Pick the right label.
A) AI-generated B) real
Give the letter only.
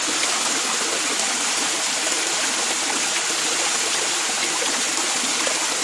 B